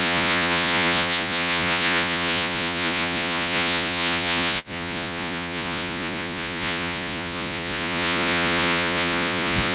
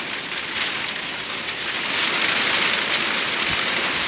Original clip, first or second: second